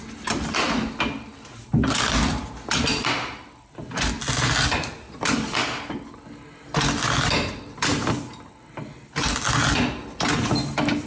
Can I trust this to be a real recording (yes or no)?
yes